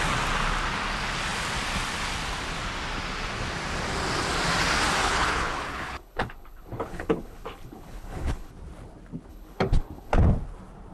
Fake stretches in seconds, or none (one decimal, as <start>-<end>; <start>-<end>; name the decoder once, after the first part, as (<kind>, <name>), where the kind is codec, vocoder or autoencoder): 5.0-8.5 (codec, HILCodec); 9.3-10.2

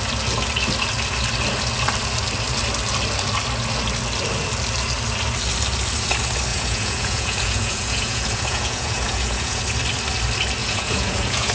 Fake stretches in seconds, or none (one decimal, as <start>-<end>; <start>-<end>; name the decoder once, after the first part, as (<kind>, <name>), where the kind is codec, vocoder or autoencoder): 6.5-9.6 (vocoder, Vocos); 10.6-11.5

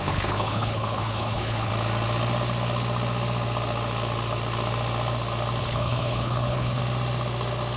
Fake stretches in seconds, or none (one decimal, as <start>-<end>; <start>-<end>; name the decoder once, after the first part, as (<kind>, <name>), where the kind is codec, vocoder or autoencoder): 0.0-1.7 (codec, HILCodec); 5.6-6.8

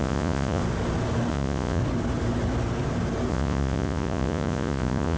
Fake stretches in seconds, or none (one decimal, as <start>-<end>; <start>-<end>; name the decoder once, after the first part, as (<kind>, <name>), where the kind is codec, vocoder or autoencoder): 0.0-0.6 (vocoder, Vocos); 1.3-1.8; 3.3-5.2